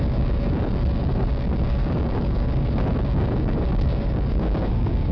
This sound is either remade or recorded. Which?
remade